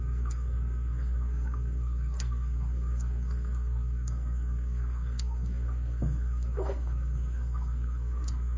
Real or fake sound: fake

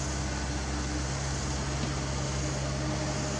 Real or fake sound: real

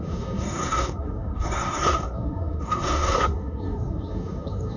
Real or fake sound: fake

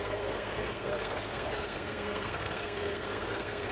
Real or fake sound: fake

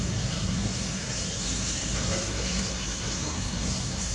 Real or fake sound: fake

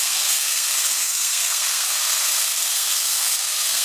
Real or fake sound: fake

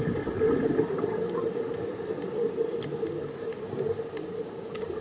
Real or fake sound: real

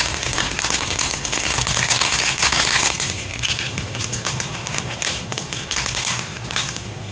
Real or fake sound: fake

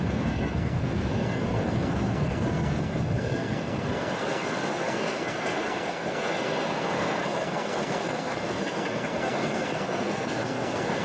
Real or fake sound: fake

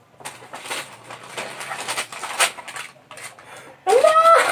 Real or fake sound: real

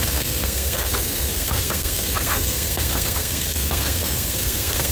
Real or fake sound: fake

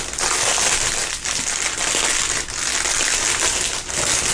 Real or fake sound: real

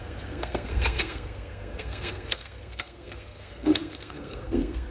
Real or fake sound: fake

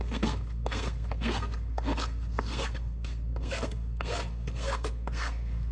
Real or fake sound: fake